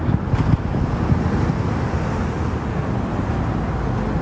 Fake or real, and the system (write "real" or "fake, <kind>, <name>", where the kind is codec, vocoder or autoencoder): real